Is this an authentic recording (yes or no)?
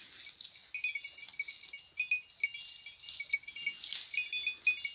yes